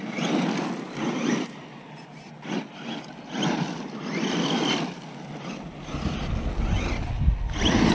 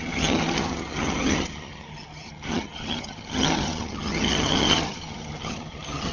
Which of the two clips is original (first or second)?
first